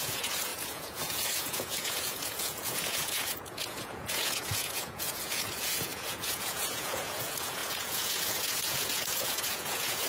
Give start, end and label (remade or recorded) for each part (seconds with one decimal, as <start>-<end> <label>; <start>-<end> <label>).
0.0-10.1 remade

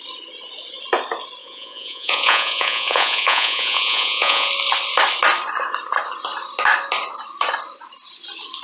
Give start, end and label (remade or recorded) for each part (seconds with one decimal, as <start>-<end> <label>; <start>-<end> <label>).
0.0-1.4 recorded; 1.4-4.5 remade; 4.5-8.6 recorded

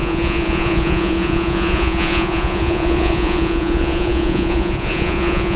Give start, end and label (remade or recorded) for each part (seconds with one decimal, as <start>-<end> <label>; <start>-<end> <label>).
0.0-5.6 remade